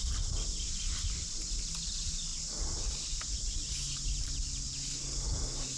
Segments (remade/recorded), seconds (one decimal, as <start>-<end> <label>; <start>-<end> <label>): 0.0-5.8 recorded